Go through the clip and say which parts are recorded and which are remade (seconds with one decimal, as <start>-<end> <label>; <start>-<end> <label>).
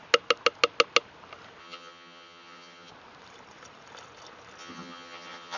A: 0.0-1.6 recorded; 1.6-2.9 remade; 2.9-4.6 recorded; 4.6-5.6 remade